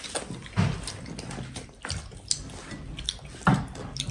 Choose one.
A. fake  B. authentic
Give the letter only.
B